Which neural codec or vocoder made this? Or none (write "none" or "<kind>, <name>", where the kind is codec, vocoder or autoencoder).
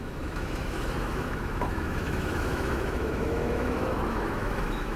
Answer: autoencoder, DAC-VAE